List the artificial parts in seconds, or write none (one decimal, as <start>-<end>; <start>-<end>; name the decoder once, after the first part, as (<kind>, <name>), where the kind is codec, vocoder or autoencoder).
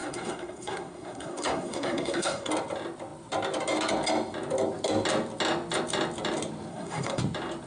0.0-2.5 (codec, SNAC); 6.7-7.2